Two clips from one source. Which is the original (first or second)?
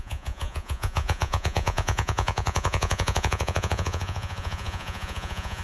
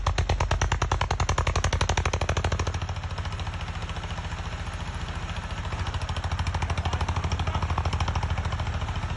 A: second